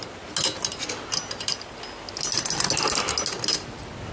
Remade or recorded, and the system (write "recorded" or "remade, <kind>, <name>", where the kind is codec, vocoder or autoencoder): recorded